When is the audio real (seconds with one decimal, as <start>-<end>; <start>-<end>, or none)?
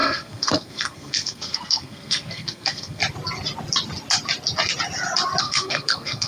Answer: 3.0-5.4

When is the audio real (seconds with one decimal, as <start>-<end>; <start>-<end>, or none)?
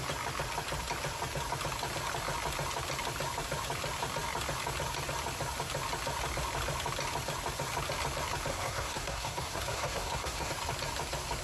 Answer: 0.0-8.5; 10.5-11.4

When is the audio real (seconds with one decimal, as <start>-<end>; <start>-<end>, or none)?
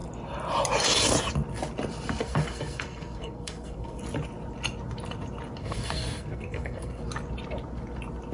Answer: 0.0-2.2; 4.0-5.6; 7.0-8.3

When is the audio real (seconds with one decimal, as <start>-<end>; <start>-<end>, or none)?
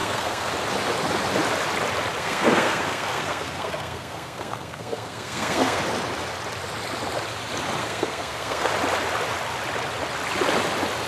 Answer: 0.5-2.2; 5.8-7.8; 8.7-11.1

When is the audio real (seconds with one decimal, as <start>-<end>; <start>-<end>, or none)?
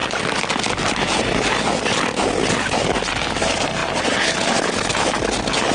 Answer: 0.0-5.7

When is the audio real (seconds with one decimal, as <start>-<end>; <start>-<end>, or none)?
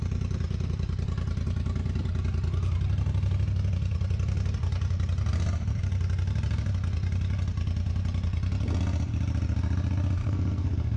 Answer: 0.0-10.2